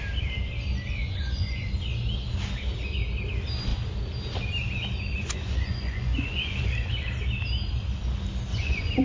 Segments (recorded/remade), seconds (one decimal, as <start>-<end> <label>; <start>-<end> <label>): 0.0-1.0 recorded; 1.0-1.7 remade; 1.7-5.2 recorded; 5.2-6.7 remade; 6.7-8.5 recorded; 8.5-9.0 remade